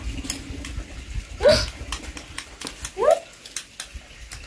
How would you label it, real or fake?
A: real